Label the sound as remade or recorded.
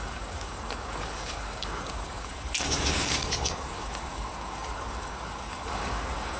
remade